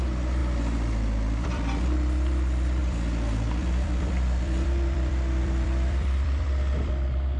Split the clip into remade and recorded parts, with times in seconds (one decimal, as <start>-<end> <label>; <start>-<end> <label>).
0.0-0.4 recorded; 0.4-1.8 remade; 1.8-2.8 recorded; 2.8-6.9 remade; 6.9-7.4 recorded